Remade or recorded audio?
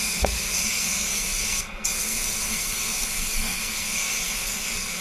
remade